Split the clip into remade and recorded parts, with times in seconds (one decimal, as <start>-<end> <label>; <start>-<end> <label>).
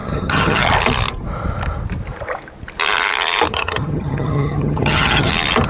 0.0-0.6 remade; 0.6-3.5 recorded; 3.5-5.3 remade; 5.3-5.7 recorded